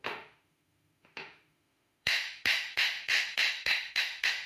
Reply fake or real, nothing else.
fake